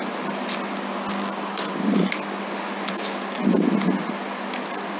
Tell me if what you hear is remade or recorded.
recorded